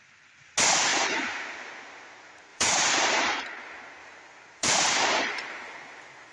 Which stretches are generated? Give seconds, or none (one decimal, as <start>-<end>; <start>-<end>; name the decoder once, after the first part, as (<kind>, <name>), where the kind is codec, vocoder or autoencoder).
0.9-1.7 (vocoder, BigVGAN v2); 2.5-3.4; 4.0-5.0